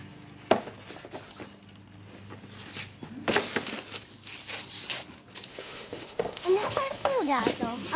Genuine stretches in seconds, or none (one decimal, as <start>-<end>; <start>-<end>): 0.0-5.5; 7.4-8.0